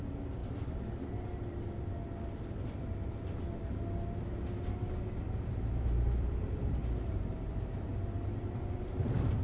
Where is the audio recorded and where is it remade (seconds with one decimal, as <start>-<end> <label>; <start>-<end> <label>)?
0.0-0.4 remade; 0.4-5.2 recorded; 5.2-6.8 remade; 6.8-7.5 recorded; 7.5-7.9 remade; 7.9-8.8 recorded; 8.8-9.4 remade